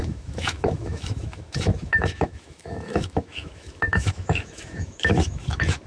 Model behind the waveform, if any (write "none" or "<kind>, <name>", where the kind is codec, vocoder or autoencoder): autoencoder, DAC-VAE